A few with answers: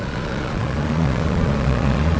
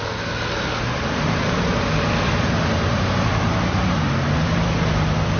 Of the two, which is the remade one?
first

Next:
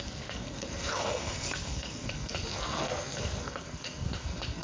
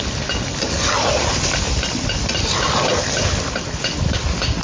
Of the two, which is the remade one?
first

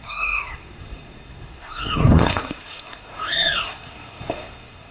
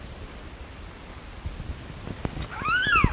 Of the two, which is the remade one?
first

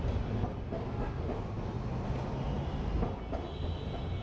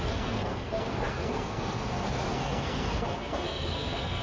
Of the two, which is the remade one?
second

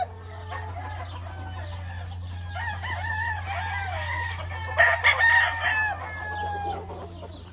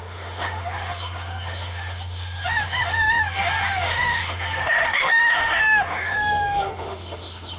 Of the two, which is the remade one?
second